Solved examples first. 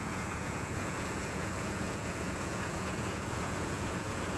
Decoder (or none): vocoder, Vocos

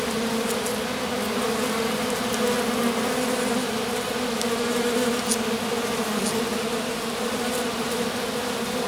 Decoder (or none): none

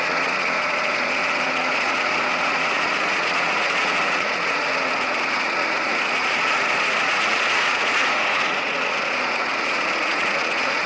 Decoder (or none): vocoder, Vocos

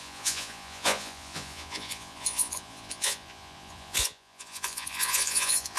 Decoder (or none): vocoder, Vocos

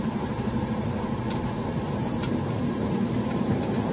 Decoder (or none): vocoder, BigVGAN v2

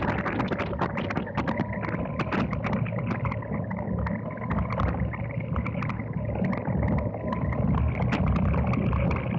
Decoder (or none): none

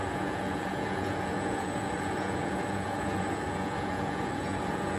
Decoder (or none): vocoder, Vocos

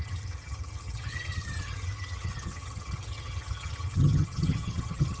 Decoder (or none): vocoder, HiFi-GAN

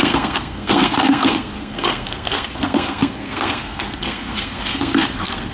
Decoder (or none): codec, SNAC